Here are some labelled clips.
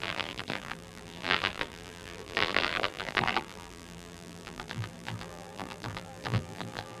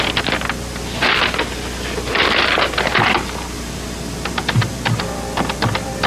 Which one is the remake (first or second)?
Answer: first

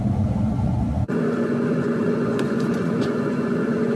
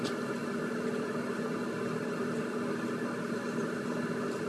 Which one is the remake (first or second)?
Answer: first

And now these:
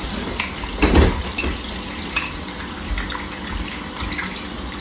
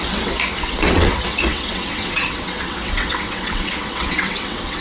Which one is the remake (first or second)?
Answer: second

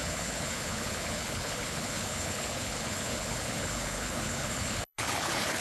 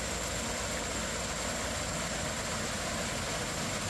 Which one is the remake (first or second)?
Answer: first